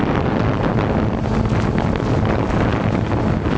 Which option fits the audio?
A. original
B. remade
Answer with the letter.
A